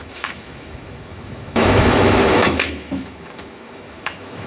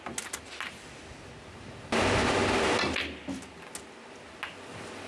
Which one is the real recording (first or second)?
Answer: second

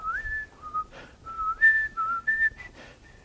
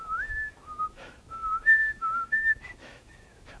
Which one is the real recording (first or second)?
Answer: first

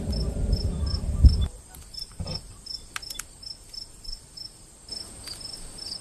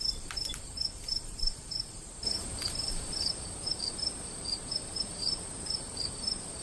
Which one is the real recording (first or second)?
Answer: first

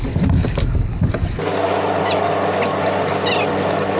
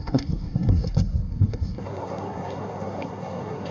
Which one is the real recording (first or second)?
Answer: first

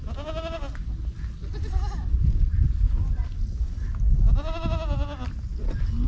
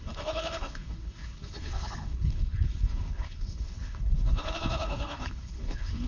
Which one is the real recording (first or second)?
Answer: first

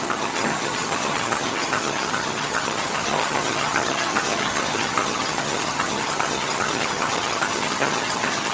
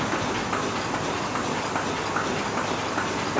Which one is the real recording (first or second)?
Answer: second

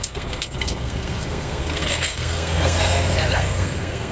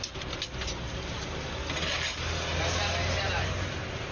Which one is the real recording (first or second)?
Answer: second